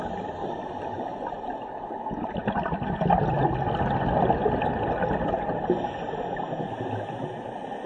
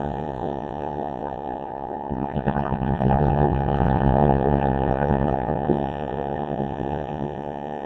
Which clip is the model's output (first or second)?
second